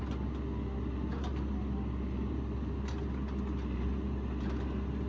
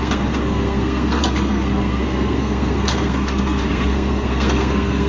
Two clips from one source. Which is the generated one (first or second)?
second